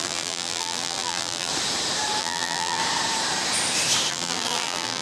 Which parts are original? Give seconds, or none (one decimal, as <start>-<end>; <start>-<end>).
1.5-2.2; 2.8-4.1

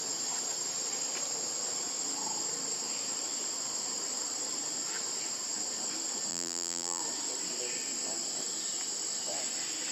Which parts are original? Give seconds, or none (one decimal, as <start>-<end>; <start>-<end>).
0.0-6.3; 7.0-9.9

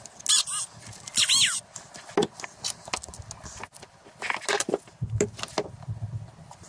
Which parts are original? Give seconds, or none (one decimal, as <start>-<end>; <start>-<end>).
0.0-6.7